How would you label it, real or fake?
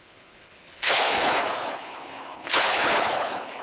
fake